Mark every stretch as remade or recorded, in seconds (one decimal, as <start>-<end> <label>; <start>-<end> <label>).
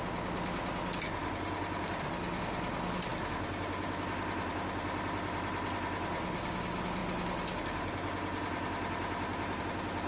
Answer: 0.0-10.1 recorded